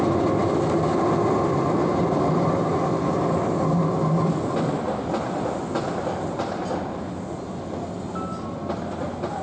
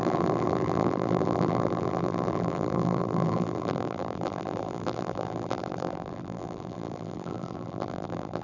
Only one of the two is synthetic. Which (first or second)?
second